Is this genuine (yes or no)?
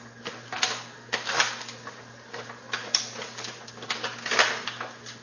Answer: yes